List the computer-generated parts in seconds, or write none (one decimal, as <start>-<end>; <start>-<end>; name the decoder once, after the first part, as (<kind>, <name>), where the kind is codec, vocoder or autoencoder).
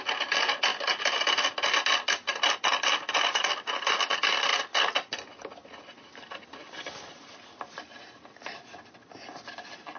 none